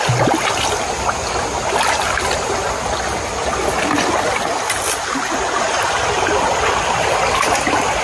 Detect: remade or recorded recorded